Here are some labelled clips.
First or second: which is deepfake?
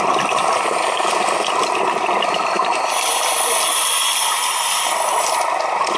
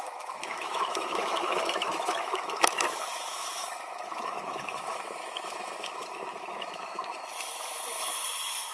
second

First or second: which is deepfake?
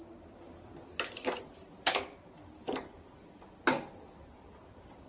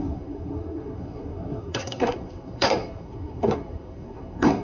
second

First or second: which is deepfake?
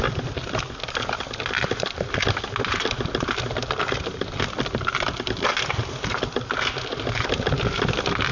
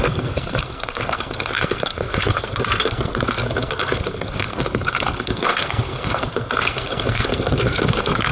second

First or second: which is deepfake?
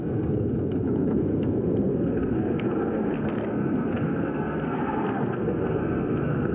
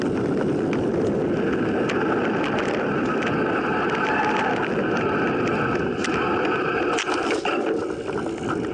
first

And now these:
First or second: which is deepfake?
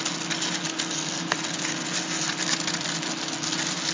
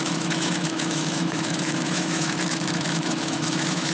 second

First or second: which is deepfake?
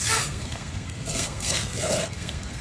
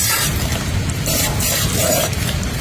first